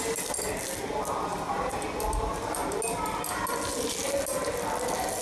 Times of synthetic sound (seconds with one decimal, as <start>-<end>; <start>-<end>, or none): none

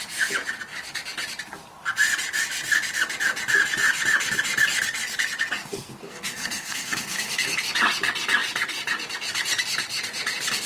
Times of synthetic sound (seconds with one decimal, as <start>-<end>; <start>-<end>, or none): 5.6-7.6

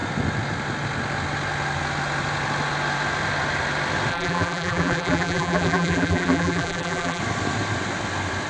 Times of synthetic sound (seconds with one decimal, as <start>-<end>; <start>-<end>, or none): 4.1-7.2